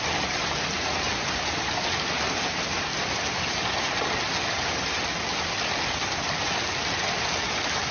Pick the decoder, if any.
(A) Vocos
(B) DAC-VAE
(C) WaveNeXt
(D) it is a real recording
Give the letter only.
D